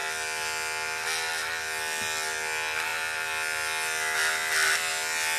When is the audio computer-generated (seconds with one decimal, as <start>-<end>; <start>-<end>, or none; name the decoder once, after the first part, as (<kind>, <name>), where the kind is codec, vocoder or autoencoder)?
none

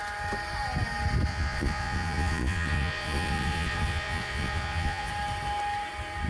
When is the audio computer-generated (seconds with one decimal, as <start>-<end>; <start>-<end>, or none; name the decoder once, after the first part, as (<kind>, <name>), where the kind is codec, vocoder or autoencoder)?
1.3-5.1 (vocoder, Vocos)